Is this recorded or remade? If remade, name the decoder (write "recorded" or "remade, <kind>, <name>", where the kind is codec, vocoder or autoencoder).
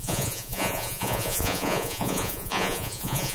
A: remade, vocoder, Vocos